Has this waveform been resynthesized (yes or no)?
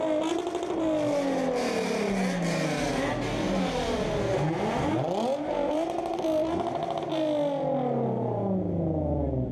no